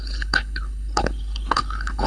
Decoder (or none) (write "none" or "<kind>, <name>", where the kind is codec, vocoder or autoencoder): codec, HILCodec